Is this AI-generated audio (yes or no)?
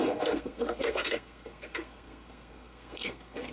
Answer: yes